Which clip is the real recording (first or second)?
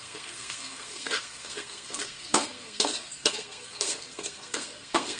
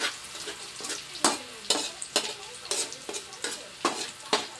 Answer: second